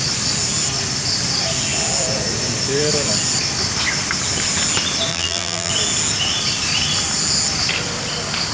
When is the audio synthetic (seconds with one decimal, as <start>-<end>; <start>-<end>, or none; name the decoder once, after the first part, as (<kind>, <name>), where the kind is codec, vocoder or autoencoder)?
5.1-5.7 (vocoder, BigVGAN v2)